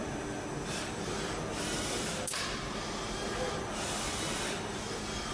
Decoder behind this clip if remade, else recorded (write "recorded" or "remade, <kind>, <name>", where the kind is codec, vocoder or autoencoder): recorded